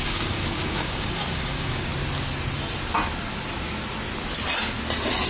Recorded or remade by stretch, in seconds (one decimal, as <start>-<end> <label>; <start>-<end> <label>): 0.0-1.9 remade; 1.9-5.3 recorded